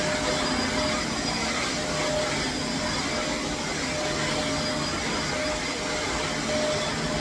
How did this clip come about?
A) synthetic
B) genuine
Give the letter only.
B